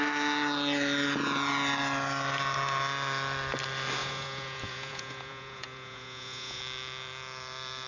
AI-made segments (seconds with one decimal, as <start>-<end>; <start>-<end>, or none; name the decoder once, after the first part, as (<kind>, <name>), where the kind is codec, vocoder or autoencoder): 4.0-6.6 (vocoder, Vocos)